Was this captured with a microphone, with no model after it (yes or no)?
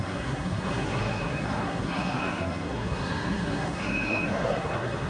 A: no